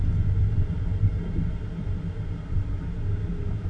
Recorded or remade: recorded